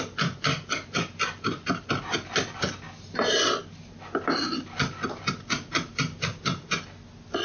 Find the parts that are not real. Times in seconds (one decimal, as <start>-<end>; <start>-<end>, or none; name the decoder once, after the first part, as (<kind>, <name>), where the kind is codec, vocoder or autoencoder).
0.5-1.9 (vocoder, BigVGAN v2)